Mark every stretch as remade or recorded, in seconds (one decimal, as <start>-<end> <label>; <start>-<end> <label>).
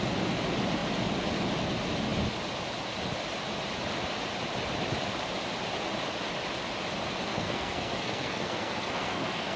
0.0-7.3 recorded; 7.3-9.6 remade